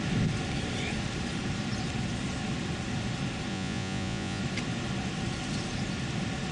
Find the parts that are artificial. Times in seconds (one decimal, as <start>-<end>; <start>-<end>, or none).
3.5-4.4